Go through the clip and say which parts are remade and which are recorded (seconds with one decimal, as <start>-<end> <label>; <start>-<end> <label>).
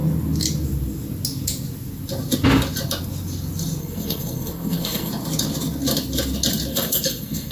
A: 0.0-3.8 recorded; 3.8-5.1 remade; 5.1-6.7 recorded; 6.7-7.5 remade